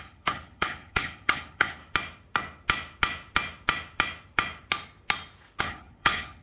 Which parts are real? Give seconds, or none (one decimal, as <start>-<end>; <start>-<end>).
1.8-5.6